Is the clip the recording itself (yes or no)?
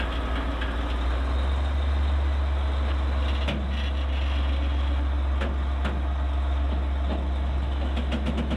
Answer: yes